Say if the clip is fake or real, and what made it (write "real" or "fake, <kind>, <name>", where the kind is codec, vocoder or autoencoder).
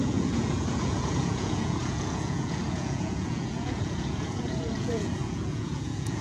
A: fake, vocoder, Vocos